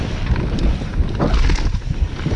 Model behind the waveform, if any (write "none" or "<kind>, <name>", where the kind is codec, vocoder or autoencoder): none